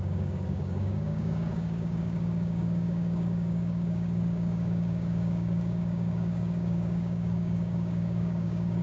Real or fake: fake